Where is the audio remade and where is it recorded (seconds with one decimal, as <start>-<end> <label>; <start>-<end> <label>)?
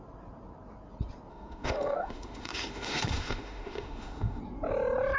0.0-1.3 recorded; 1.3-4.4 remade; 4.4-5.2 recorded